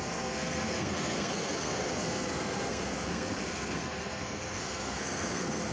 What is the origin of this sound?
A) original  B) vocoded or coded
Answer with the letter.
B